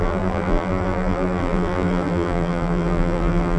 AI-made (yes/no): yes